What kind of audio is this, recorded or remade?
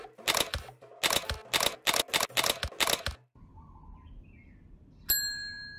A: recorded